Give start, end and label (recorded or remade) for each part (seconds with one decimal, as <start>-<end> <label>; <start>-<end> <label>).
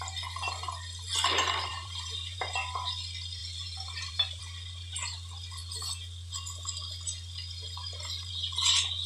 0.0-1.7 recorded; 1.7-2.7 remade; 2.7-3.4 recorded; 3.4-4.4 remade; 4.4-9.1 recorded